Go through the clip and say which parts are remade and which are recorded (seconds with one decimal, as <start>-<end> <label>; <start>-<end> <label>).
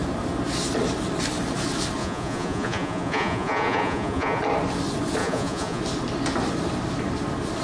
0.0-2.0 recorded; 2.0-4.4 remade; 4.4-5.2 recorded; 5.2-5.8 remade; 5.8-7.6 recorded